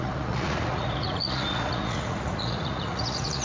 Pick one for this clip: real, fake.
fake